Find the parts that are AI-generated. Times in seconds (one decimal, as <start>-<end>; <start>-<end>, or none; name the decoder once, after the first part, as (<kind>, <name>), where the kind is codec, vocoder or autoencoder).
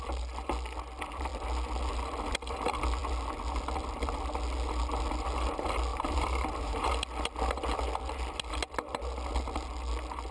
5.9-6.9 (vocoder, BigVGAN v2)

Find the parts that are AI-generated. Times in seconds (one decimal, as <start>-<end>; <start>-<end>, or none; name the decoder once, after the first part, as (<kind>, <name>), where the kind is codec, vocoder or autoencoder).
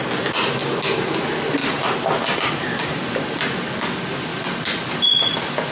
1.6-3.4 (vocoder, BigVGAN v2)